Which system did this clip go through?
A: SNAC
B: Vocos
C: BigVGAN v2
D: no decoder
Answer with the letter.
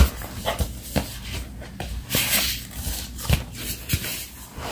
D